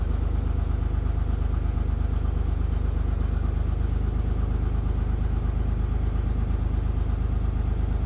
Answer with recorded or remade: recorded